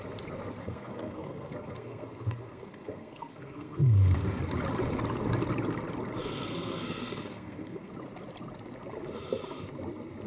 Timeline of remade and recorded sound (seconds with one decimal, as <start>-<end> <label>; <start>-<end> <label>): 0.0-0.6 recorded; 0.6-4.4 remade; 4.4-6.2 recorded; 6.2-7.9 remade; 7.9-10.3 recorded